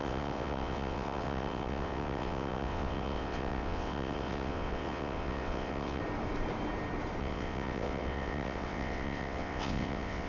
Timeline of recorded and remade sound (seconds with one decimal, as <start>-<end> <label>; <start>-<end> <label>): 0.0-6.0 remade; 6.0-7.2 recorded; 7.2-10.3 remade